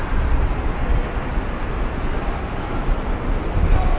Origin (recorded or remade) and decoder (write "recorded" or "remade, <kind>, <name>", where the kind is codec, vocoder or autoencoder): recorded